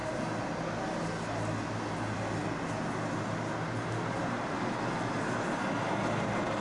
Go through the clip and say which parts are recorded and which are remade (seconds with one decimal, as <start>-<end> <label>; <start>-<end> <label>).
0.0-6.6 recorded